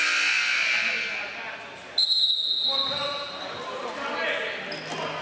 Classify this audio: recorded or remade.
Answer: recorded